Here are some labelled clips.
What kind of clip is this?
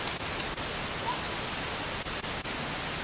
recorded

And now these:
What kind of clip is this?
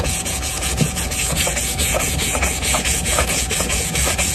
remade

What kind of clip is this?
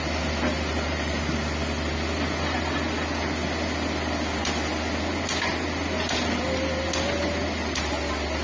recorded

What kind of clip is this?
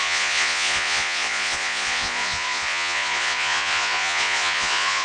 remade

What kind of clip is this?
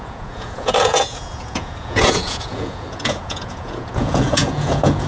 remade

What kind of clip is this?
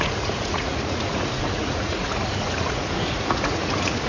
remade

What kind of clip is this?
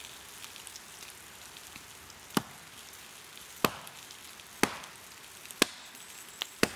recorded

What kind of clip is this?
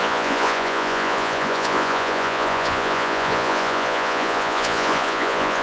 remade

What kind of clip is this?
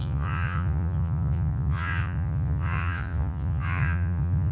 remade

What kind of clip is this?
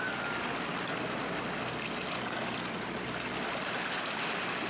recorded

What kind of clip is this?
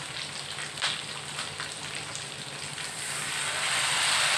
recorded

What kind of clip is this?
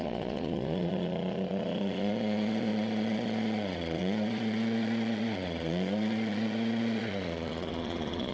remade